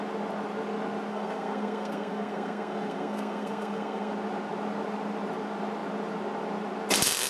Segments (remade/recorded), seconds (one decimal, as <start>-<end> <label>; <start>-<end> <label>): 0.0-1.1 recorded; 1.1-4.1 remade; 4.1-7.3 recorded